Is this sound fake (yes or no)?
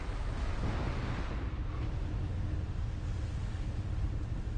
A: no